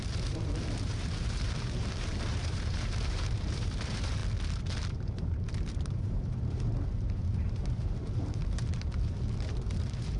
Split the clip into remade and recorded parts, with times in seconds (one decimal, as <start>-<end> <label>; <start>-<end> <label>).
0.0-4.2 remade; 4.2-4.8 recorded; 4.8-10.2 remade